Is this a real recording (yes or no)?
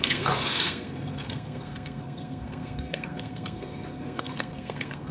no